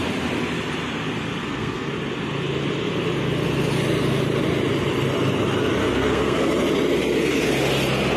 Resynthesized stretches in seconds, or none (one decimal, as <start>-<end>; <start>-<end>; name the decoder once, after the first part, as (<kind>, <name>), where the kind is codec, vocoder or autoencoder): 1.4-1.9 (codec, SNAC); 5.8-6.5